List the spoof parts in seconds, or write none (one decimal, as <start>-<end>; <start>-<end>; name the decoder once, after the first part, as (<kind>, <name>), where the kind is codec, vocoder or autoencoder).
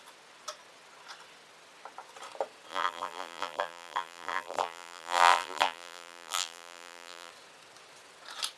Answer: 2.7-7.3 (vocoder, BigVGAN v2)